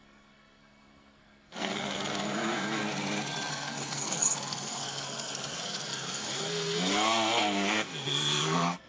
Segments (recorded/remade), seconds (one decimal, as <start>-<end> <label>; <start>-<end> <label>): 0.0-2.8 remade; 2.8-3.5 recorded; 3.5-8.9 remade